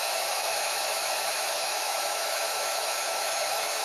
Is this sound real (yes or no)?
no